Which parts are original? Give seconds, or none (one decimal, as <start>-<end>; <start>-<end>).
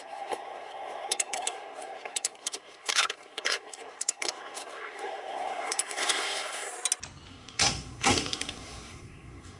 6.7-7.3